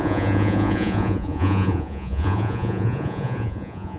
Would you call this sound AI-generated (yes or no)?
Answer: yes